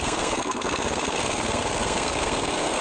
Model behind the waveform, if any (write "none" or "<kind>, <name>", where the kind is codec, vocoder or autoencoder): codec, SNAC